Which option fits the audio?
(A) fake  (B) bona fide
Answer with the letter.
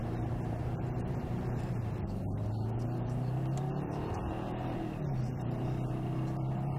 A